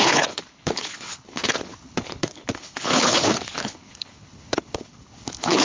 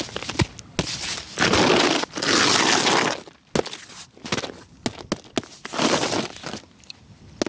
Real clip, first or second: second